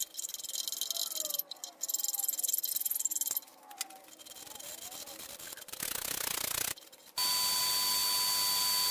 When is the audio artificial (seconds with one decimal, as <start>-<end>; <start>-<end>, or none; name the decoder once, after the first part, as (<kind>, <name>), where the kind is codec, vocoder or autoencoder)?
none